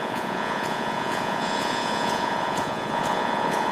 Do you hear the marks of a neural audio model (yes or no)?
yes